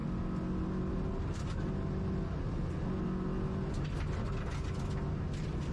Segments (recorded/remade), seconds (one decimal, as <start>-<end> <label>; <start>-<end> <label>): 0.0-5.7 recorded